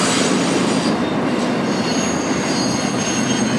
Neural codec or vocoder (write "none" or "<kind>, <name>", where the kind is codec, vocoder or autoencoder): none